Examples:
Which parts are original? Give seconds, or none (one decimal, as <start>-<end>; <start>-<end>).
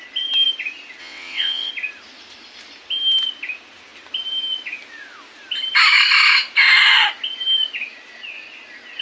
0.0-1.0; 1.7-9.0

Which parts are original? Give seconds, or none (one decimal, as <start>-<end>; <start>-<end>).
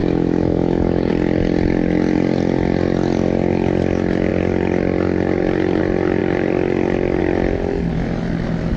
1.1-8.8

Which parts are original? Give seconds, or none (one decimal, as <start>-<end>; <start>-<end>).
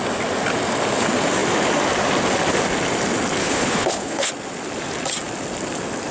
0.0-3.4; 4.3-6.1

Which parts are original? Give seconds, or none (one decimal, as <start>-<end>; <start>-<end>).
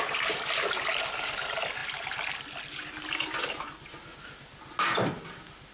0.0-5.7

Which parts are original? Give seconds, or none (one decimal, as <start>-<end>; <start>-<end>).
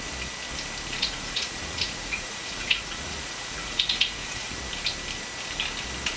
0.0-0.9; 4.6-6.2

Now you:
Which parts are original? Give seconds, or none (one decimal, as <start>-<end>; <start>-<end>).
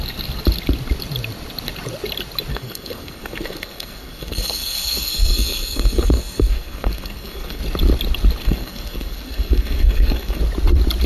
0.0-2.5; 7.6-8.4; 10.4-11.1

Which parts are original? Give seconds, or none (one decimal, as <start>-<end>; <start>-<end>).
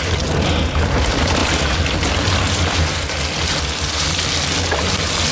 0.0-5.3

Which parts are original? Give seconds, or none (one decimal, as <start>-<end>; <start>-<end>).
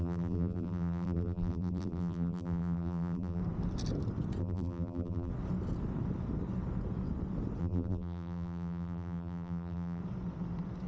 3.4-4.4; 5.3-7.6; 10.0-10.9